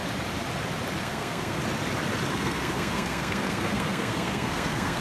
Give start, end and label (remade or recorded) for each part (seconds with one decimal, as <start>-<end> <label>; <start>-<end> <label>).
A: 0.0-1.0 recorded; 1.0-1.6 remade; 1.6-2.3 recorded; 2.3-5.0 remade